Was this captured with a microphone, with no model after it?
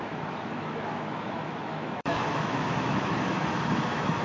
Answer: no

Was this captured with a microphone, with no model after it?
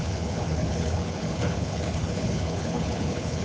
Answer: no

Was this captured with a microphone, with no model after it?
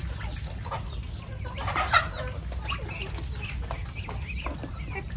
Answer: yes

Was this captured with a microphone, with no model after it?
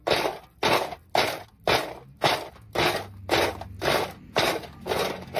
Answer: yes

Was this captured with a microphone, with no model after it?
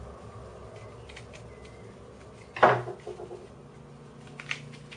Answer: yes